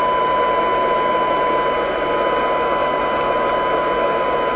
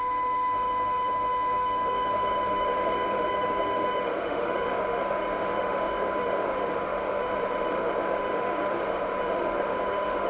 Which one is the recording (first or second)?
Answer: first